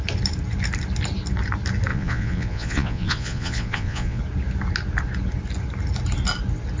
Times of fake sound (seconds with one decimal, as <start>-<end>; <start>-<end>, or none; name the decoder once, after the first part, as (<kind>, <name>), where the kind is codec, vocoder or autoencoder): 1.9-4.2 (vocoder, Vocos)